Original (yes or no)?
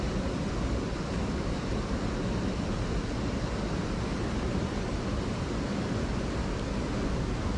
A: yes